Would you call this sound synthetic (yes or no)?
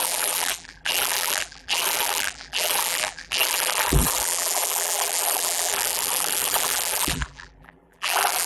yes